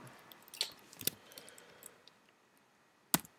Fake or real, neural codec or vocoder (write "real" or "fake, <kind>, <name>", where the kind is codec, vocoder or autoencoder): real